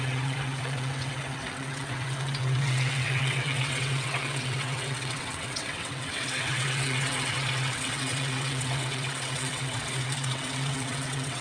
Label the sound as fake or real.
fake